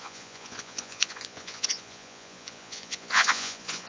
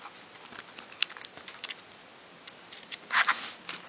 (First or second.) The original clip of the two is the second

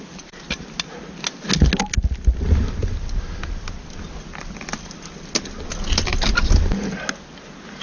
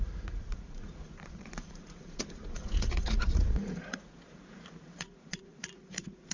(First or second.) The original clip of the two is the first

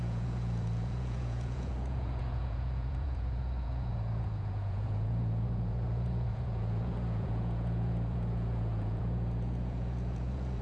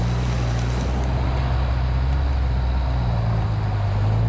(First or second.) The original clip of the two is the second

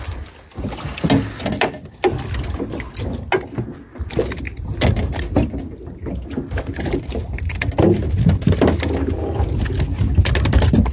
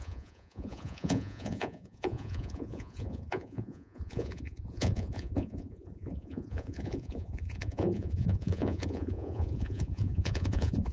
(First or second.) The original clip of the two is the first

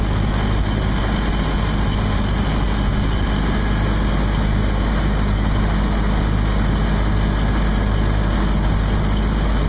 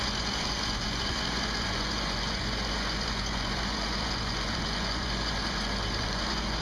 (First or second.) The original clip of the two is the first